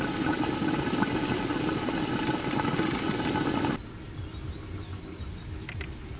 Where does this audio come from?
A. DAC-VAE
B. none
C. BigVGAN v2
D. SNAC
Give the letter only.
B